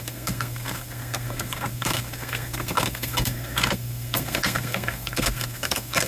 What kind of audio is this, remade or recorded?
remade